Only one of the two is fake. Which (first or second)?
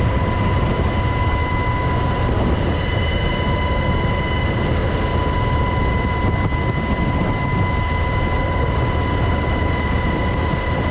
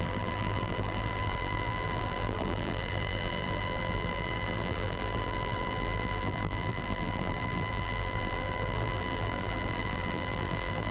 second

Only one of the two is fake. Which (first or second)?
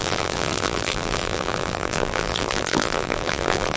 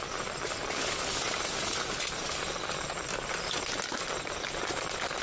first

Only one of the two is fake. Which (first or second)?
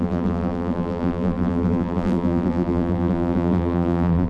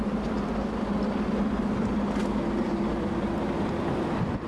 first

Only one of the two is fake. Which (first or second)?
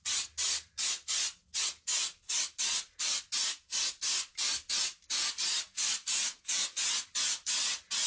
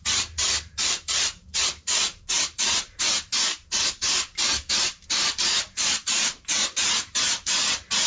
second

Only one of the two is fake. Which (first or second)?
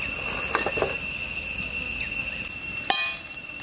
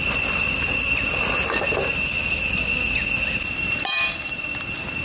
second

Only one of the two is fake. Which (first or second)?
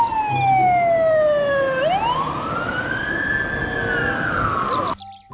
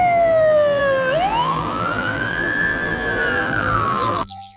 second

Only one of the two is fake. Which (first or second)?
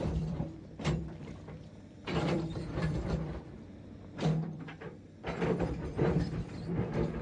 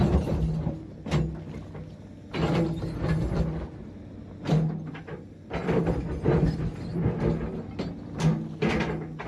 first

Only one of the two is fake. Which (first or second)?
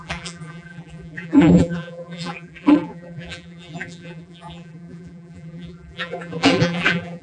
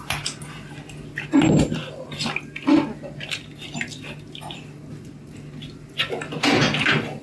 first